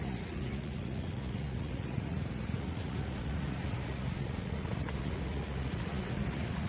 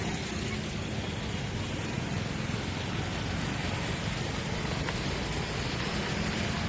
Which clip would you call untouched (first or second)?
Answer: second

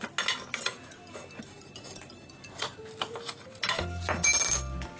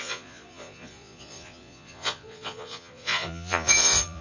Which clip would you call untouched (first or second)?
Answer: first